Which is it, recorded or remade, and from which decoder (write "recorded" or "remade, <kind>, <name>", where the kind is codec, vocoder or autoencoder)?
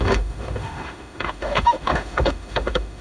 remade, autoencoder, DAC-VAE